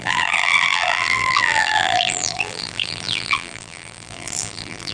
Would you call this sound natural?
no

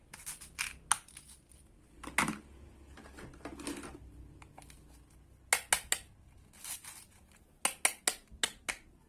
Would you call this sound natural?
yes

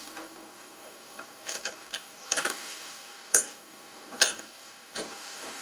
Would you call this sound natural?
no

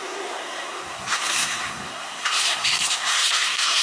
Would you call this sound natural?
no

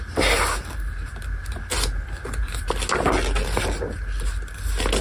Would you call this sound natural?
yes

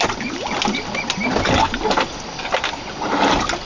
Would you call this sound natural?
yes